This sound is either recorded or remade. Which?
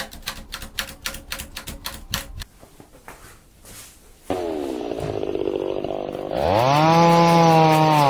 recorded